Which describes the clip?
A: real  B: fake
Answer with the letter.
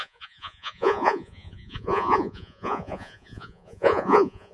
B